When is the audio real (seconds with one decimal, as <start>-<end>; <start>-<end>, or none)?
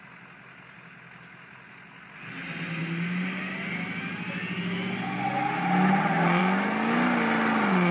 0.0-7.9